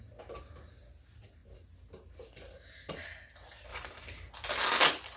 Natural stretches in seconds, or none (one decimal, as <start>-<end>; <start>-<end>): 0.0-5.2